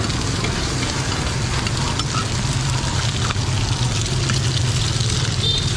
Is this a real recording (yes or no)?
yes